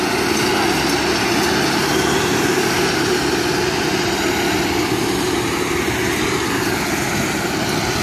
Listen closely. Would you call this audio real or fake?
real